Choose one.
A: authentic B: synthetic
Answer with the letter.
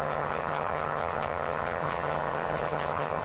B